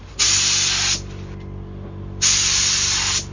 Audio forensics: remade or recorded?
recorded